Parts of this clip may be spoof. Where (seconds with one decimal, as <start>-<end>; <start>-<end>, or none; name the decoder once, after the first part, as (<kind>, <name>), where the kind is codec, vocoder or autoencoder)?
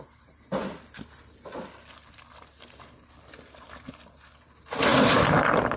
none